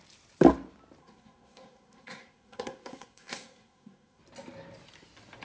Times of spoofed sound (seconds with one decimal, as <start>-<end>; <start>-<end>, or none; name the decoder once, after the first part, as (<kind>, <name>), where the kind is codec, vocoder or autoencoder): 1.0-4.2 (codec, SNAC)